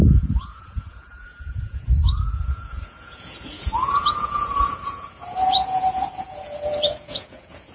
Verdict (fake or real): fake